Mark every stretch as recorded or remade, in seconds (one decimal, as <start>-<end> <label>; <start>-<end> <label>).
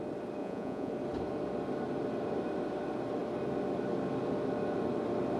0.0-0.4 recorded; 0.4-0.9 remade; 0.9-5.4 recorded